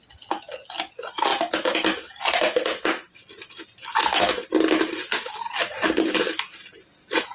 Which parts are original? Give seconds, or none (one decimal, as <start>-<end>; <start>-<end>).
0.0-1.3; 4.5-5.0; 6.7-7.3